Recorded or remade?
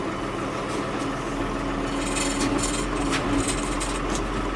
recorded